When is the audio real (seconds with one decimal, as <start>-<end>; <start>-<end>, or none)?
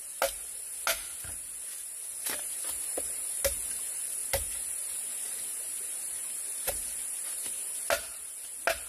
0.0-8.9